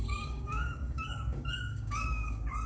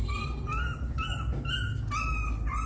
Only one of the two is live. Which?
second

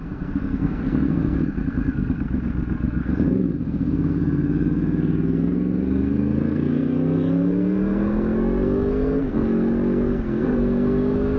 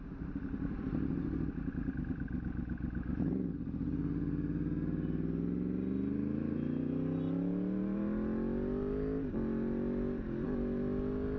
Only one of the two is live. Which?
second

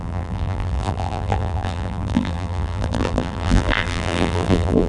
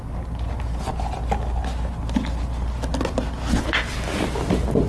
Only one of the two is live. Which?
second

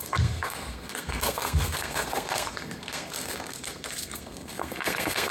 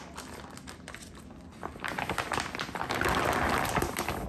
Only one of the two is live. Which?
second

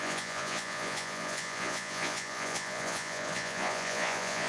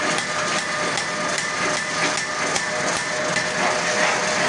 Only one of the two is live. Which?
second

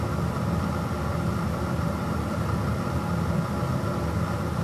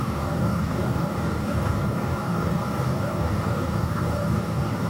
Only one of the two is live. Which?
first